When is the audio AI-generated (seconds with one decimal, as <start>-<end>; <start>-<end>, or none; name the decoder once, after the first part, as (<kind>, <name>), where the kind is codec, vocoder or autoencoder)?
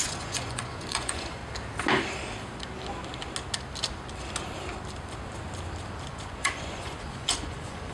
0.0-1.4 (vocoder, Vocos); 6.1-7.9